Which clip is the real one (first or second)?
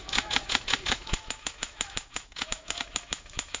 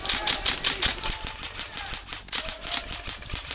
second